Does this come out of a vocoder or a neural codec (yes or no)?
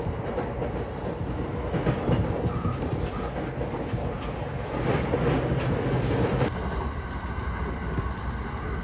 no